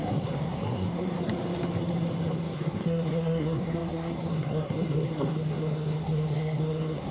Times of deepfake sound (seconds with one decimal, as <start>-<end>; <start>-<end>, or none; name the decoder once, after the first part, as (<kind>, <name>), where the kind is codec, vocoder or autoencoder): 0.0-1.2 (codec, SNAC); 2.3-7.1